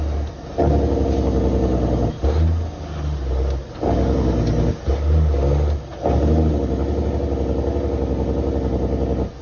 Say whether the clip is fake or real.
real